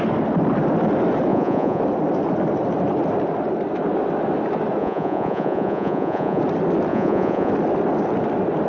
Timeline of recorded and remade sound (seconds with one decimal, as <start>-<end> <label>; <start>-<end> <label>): 0.0-1.3 recorded; 1.3-1.8 remade; 1.8-4.8 recorded; 4.8-6.4 remade; 6.4-6.9 recorded; 6.9-7.5 remade; 7.5-8.7 recorded